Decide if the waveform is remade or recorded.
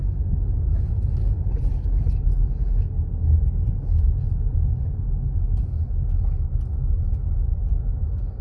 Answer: recorded